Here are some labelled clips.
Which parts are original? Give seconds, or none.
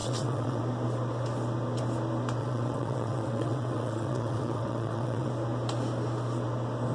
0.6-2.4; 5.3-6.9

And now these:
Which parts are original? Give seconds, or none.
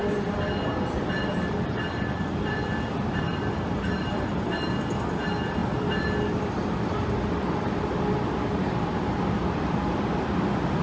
0.0-1.8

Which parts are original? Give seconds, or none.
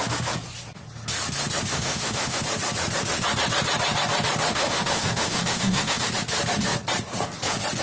0.0-1.7; 2.4-4.5; 6.1-7.8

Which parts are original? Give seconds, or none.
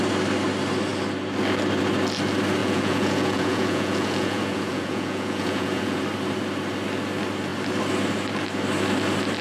0.0-2.6; 6.0-9.4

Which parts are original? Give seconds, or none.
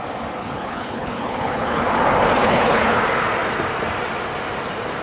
0.0-0.4; 1.8-2.4; 3.0-5.0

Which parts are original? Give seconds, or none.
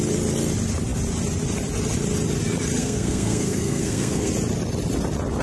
0.0-2.8; 4.3-5.4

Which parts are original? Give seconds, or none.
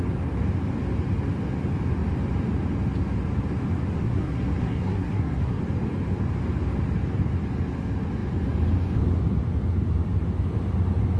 0.0-3.9; 5.6-11.2